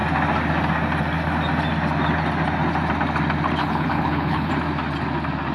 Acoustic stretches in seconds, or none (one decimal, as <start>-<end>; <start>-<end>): 0.0-3.6; 4.5-5.5

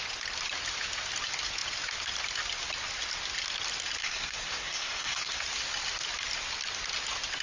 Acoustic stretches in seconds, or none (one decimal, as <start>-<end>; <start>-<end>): 0.0-4.0; 5.4-7.4

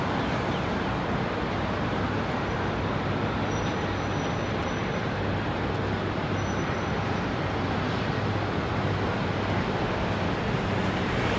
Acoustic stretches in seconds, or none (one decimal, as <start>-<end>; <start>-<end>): 0.0-11.4

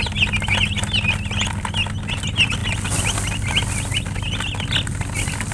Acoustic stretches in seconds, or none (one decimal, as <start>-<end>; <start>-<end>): 0.0-5.5

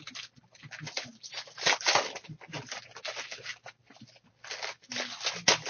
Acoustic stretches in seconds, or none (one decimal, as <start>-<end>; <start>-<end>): 0.0-5.7

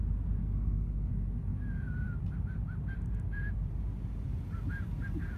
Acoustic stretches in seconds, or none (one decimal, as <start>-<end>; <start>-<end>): 0.0-0.4; 1.1-5.4